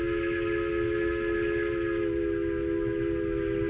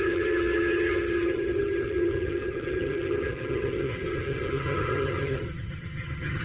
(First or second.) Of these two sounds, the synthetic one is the second